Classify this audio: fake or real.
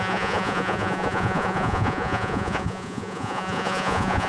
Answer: fake